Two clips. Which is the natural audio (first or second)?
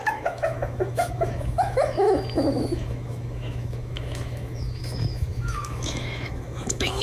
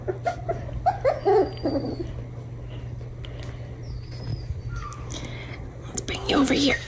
second